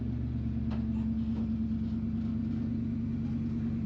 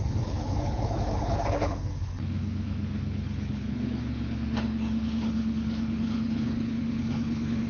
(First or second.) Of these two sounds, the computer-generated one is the second